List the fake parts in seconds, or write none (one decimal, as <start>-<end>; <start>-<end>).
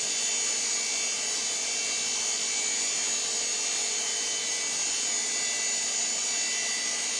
none